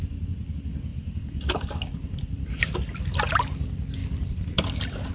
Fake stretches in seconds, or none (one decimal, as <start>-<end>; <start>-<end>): 0.9-3.3; 4.0-5.1